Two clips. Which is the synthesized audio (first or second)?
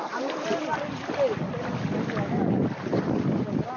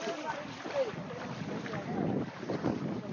second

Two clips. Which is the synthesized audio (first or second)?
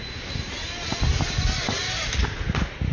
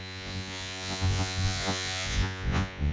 second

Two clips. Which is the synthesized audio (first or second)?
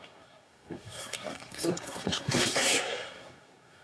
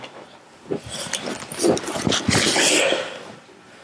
first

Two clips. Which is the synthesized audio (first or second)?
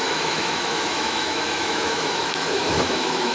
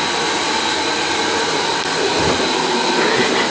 first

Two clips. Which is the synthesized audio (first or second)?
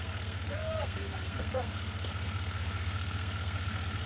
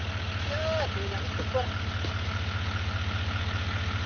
first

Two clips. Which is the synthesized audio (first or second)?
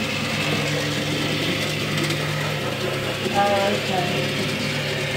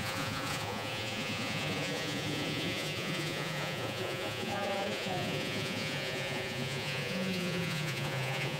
second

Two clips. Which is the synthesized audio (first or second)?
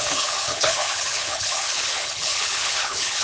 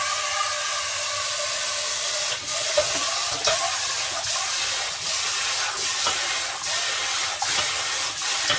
first